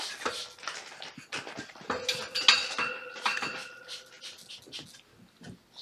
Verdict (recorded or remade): recorded